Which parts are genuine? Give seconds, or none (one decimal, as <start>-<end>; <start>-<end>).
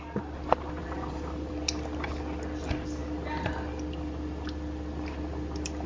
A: 0.0-0.8; 1.5-5.9